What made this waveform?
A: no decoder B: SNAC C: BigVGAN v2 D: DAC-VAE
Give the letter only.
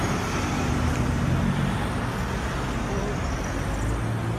A